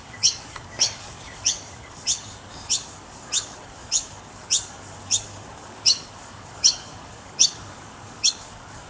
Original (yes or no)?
no